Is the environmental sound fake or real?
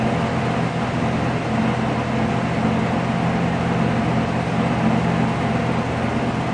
real